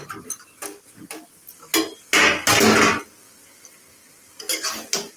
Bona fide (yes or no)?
yes